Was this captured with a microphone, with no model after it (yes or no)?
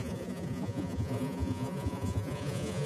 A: no